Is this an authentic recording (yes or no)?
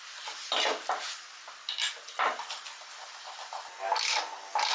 yes